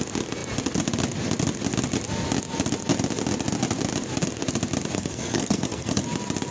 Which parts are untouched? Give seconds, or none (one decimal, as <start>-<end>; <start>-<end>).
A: 0.0-4.9; 6.0-6.5